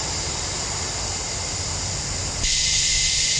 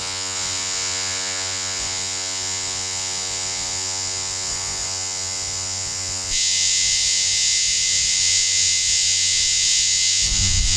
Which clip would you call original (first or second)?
first